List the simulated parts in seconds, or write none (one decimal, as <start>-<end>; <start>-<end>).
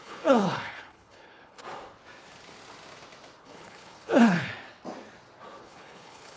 0.0-1.6; 3.4-4.5; 5.6-6.4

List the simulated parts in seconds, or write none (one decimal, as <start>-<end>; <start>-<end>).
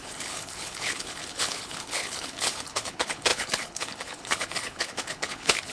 0.0-5.7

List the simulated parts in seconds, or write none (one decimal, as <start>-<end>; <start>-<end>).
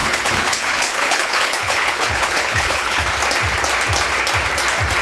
0.0-3.0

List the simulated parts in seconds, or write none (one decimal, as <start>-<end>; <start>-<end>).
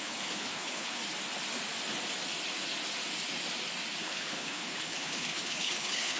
0.0-1.0; 4.0-6.2